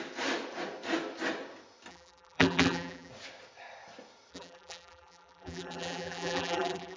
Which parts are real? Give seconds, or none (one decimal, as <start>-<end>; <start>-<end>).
0.0-1.9; 3.1-4.3